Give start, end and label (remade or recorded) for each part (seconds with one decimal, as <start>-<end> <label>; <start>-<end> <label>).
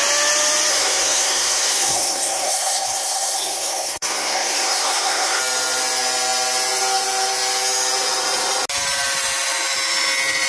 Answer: 0.0-0.7 recorded; 0.7-5.4 remade; 5.4-10.5 recorded